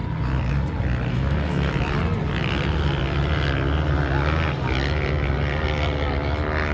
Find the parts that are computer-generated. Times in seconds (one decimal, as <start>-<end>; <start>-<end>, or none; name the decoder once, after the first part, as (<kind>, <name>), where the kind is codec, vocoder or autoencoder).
1.1-1.7 (codec, SNAC)